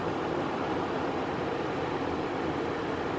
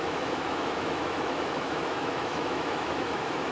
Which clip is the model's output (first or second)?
second